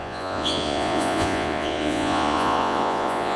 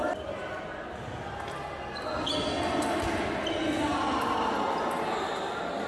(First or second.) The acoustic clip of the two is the second